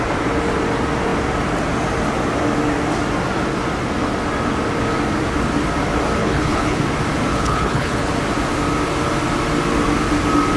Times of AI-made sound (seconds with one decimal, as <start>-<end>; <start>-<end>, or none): 6.2-6.8; 7.3-8.1